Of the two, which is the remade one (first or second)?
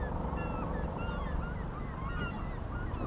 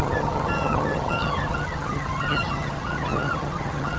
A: second